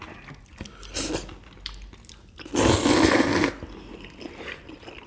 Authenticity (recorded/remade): recorded